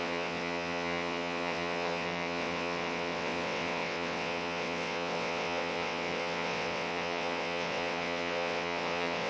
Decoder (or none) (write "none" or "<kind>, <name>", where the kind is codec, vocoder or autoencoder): vocoder, WaveNeXt